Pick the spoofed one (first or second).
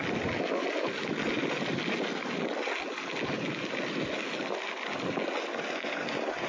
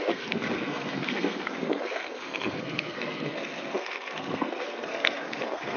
second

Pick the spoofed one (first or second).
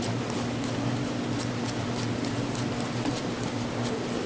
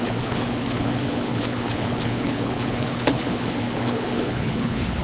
second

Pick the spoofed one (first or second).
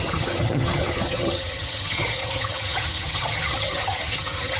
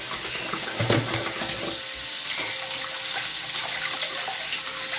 first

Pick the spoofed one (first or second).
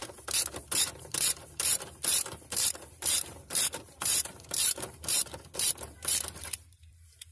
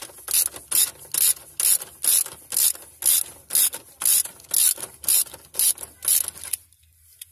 first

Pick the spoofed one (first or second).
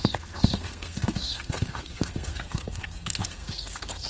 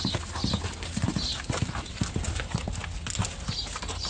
first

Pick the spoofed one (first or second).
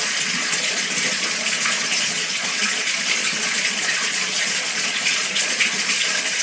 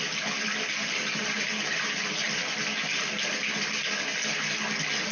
first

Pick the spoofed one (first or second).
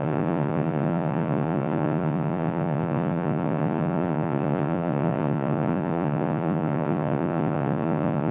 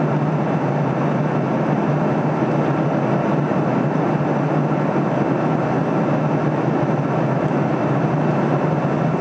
first